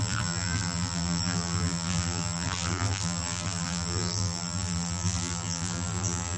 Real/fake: fake